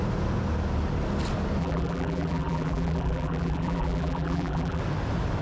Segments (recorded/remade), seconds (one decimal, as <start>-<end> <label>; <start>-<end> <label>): 0.0-1.6 recorded; 1.6-4.8 remade; 4.8-5.4 recorded